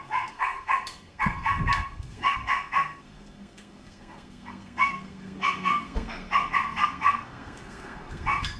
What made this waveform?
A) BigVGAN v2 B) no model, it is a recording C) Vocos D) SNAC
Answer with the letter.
D